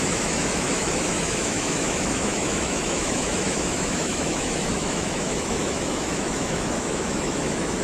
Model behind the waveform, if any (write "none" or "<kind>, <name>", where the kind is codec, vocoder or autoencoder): autoencoder, DAC-VAE